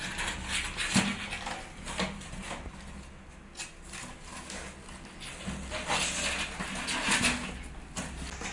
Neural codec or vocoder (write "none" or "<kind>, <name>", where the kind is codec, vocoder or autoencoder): none